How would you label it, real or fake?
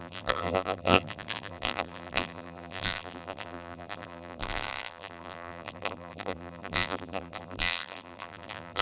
fake